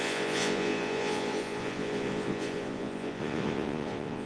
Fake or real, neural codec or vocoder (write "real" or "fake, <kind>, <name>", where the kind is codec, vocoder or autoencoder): fake, vocoder, Vocos